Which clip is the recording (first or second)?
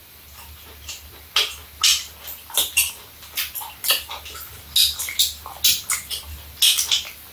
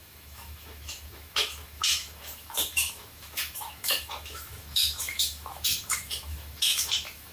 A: first